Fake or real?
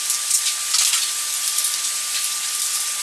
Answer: real